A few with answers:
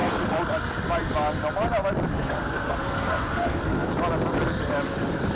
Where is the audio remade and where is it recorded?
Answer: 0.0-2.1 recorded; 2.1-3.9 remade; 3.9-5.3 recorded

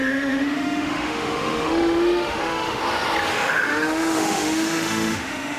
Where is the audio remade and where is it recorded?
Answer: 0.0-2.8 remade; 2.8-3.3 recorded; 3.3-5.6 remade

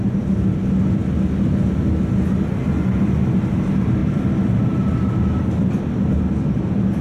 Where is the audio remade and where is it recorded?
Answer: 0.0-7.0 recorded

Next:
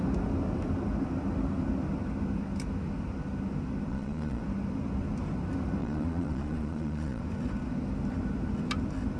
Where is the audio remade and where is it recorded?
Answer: 0.0-3.9 recorded; 3.9-4.4 remade; 4.4-5.8 recorded; 5.8-7.2 remade; 7.2-9.2 recorded

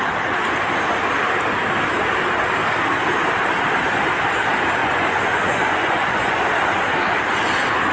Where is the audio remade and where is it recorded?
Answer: 0.0-4.8 recorded; 4.8-6.4 remade; 6.4-7.9 recorded

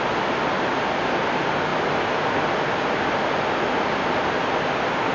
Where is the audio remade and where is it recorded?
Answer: 0.0-5.1 recorded

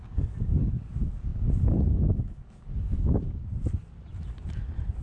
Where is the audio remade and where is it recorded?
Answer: 0.0-3.4 remade; 3.4-5.0 recorded